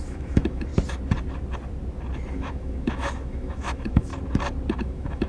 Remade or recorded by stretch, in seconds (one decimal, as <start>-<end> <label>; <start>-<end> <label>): 0.0-0.7 remade; 0.7-2.3 recorded; 2.3-4.1 remade; 4.1-4.8 recorded; 4.8-5.3 remade